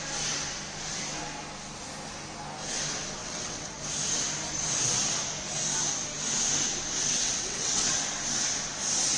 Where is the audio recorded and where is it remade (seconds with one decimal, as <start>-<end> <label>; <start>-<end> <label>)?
0.0-3.2 recorded; 3.2-3.8 remade; 3.8-7.0 recorded; 7.0-7.9 remade; 7.9-9.2 recorded

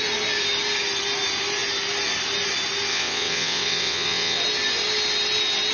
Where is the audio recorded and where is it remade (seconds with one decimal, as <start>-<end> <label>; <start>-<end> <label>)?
0.0-2.9 recorded; 2.9-4.4 remade; 4.4-5.7 recorded